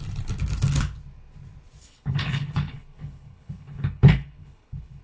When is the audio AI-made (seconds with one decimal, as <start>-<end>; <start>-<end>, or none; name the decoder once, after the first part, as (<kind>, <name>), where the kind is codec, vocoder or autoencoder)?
1.8-5.0 (codec, HILCodec)